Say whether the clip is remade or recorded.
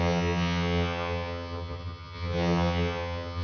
remade